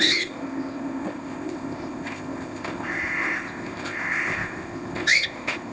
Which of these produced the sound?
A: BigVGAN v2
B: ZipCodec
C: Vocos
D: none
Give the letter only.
B